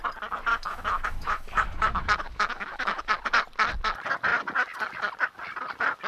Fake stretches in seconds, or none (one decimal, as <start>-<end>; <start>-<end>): 0.5-3.1